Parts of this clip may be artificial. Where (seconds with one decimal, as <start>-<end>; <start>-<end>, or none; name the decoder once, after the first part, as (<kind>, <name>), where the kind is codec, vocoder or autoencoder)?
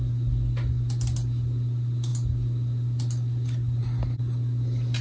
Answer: none